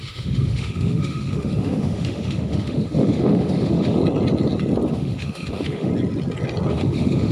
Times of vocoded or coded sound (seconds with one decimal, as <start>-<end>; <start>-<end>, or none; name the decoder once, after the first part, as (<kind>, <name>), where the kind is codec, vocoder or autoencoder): 0.0-4.0 (autoencoder, DAC-VAE); 4.9-5.9; 6.7-7.3